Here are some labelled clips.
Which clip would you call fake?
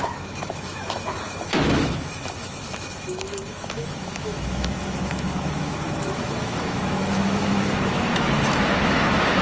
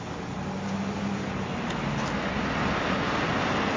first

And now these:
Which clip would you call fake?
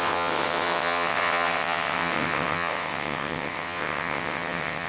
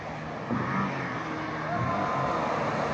first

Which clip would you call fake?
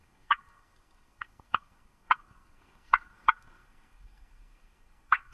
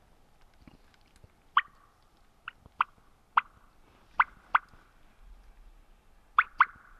first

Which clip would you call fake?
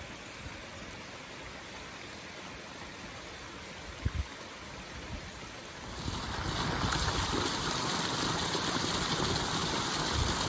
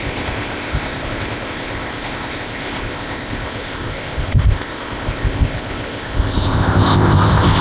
second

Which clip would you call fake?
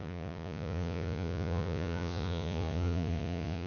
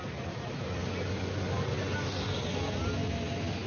first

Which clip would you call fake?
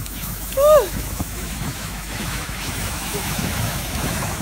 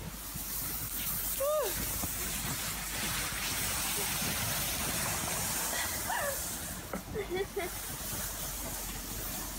first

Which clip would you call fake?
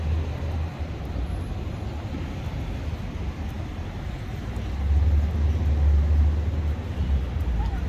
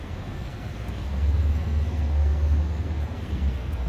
second